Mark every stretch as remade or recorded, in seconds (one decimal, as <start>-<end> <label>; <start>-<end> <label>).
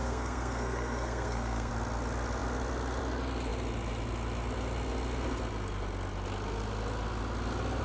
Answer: 0.0-1.7 remade; 1.7-7.8 recorded